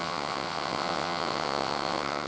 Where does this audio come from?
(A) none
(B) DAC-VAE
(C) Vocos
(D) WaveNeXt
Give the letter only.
D